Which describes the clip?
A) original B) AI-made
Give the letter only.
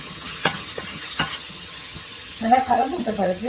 B